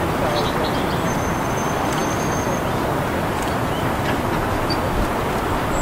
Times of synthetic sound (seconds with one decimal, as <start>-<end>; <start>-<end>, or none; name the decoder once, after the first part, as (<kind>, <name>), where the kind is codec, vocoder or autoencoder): none